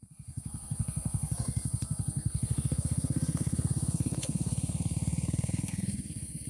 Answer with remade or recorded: remade